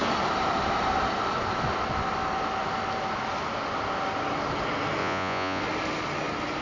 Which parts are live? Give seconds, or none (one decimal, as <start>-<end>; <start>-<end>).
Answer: 0.0-5.0; 5.6-6.6